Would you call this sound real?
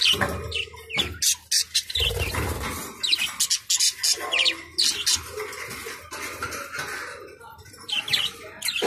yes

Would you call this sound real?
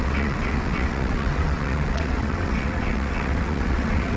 no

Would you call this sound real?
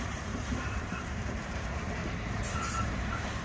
no